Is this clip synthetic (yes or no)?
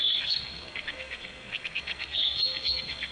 yes